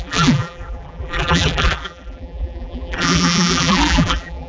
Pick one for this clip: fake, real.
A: fake